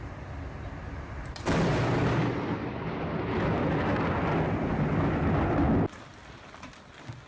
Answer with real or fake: real